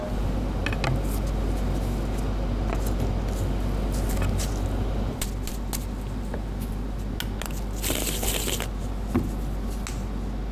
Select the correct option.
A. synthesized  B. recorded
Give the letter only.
B